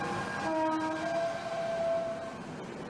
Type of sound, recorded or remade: recorded